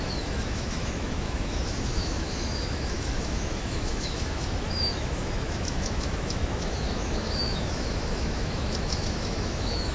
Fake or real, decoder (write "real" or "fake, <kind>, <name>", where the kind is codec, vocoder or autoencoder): fake, autoencoder, DAC-VAE